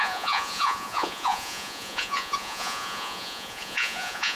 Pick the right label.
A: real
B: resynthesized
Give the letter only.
B